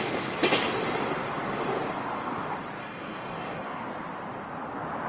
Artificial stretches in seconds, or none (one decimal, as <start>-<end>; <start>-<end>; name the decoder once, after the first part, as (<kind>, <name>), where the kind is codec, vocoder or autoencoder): 2.8-3.8 (codec, DAC)